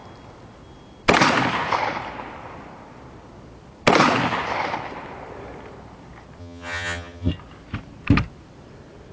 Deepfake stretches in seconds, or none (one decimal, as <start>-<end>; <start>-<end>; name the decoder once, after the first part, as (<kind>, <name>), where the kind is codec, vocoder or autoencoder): 6.4-7.3 (vocoder, HiFi-GAN)